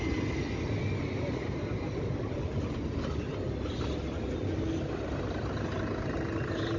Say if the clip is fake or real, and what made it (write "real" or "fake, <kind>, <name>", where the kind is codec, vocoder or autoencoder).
real